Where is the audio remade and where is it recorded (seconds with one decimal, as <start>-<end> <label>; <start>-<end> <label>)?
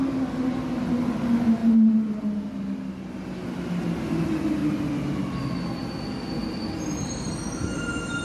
0.0-8.2 recorded